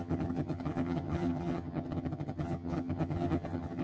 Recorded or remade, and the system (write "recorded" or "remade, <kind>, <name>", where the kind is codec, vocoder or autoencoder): remade, vocoder, HiFi-GAN